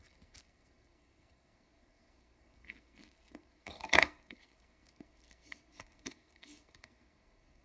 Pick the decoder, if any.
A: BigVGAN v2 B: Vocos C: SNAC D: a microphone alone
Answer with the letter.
C